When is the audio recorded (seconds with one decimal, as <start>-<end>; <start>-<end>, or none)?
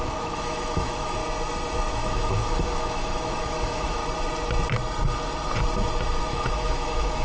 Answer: 1.2-1.9; 4.0-6.3